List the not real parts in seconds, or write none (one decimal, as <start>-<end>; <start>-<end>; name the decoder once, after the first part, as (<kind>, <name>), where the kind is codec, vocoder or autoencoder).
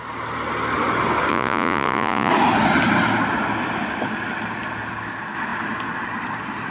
1.3-2.3 (vocoder, Vocos)